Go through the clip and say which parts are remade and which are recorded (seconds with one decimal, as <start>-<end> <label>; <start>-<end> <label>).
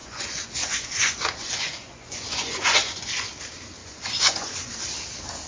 0.0-3.3 remade; 3.3-3.8 recorded; 3.8-4.7 remade; 4.7-5.5 recorded